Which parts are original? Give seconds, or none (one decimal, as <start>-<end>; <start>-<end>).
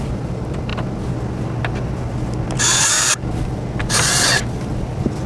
0.0-5.3